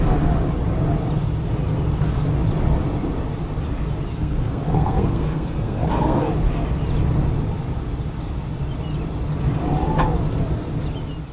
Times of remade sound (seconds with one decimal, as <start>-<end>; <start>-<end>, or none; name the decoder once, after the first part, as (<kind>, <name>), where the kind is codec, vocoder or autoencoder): 4.1-6.3 (codec, SNAC)